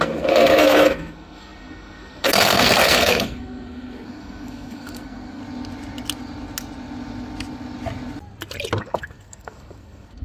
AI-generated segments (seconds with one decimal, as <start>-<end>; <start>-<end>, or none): 0.0-5.4; 8.8-10.2